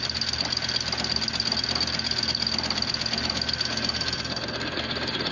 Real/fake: real